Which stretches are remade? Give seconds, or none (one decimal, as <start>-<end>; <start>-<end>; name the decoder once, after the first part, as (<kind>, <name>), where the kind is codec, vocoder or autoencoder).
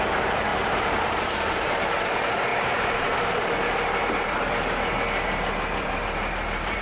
0.0-6.8 (vocoder, BigVGAN v2)